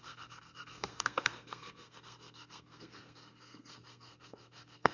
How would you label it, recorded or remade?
remade